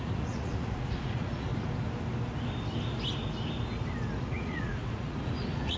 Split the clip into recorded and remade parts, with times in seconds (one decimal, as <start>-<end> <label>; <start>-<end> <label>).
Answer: 0.0-1.5 remade; 1.5-4.2 recorded; 4.2-5.8 remade